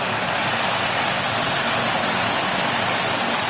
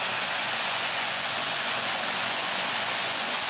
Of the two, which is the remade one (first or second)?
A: second